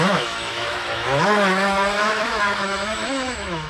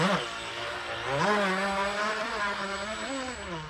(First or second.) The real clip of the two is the second